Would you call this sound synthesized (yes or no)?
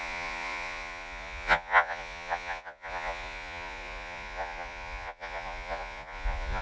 yes